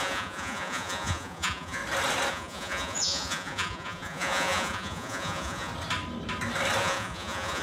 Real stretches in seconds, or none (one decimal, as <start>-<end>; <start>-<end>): 1.8-2.3; 5.7-6.8